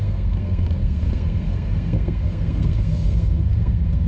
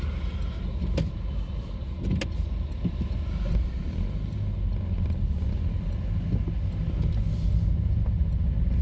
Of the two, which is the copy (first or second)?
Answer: first